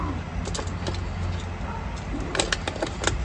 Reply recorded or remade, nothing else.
recorded